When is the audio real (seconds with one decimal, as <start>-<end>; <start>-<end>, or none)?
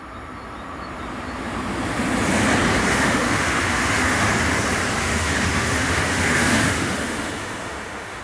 0.0-2.9; 4.3-5.0